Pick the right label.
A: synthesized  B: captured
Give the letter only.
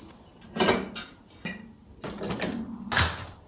B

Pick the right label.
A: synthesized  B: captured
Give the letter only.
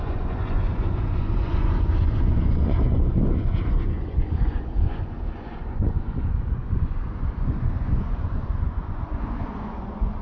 A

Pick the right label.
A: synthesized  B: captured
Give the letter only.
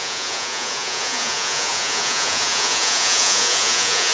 A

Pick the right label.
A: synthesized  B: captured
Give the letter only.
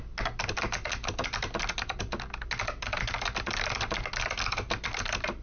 B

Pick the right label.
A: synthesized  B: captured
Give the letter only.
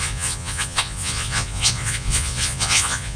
A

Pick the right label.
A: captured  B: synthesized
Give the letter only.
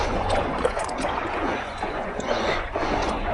B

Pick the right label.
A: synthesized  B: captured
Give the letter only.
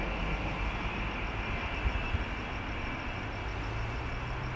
B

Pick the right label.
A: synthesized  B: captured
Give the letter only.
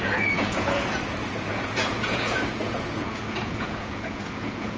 A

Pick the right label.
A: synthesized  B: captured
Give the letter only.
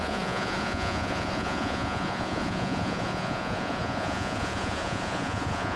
A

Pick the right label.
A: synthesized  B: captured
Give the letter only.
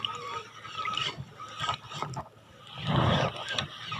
B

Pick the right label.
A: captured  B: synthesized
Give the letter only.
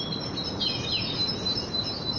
A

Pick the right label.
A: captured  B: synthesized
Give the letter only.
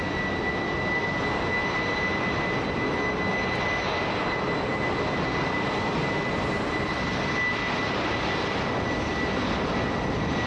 A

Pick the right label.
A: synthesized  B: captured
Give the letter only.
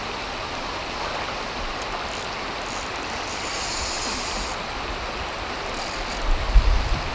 B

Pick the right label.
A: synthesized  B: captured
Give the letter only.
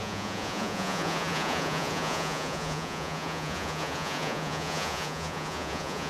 A